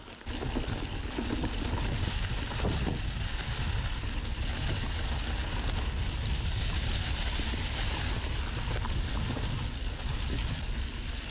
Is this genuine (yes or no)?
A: yes